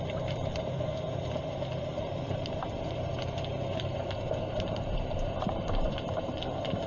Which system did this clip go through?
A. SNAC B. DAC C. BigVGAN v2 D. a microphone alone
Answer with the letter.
C